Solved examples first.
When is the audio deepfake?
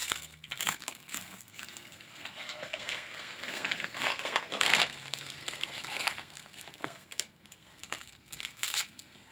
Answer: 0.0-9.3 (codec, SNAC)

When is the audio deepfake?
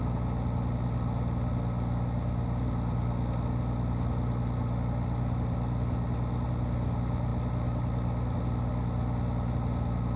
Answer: none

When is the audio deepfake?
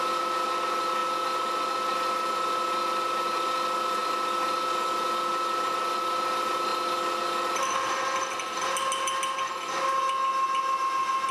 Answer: none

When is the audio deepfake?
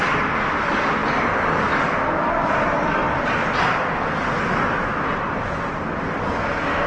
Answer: none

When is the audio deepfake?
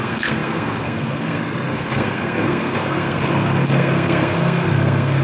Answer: 0.0-5.2 (codec, SNAC)